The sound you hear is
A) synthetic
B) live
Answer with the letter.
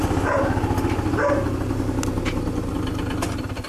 B